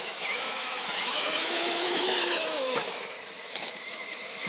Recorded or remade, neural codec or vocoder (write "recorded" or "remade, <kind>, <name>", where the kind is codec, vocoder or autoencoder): remade, autoencoder, DAC-VAE